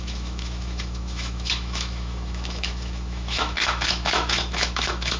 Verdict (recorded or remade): remade